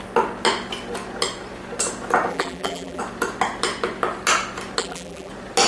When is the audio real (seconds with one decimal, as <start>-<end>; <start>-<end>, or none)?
0.0-2.3; 3.0-4.8; 5.3-5.7